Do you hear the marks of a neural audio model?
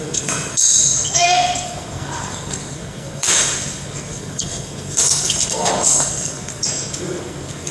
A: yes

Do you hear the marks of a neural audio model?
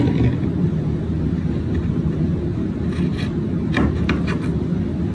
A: no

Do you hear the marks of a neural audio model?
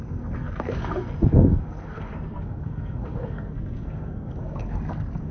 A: yes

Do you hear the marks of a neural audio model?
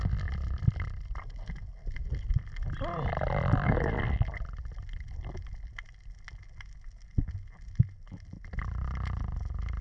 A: no